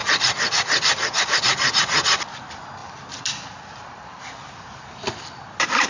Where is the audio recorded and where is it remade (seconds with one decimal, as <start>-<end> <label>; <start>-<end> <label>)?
0.0-5.9 recorded